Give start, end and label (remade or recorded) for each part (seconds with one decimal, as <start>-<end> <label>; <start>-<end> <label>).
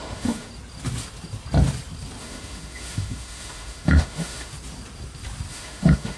0.0-0.5 remade; 0.5-2.2 recorded; 2.2-4.5 remade; 4.5-5.5 recorded; 5.5-6.2 remade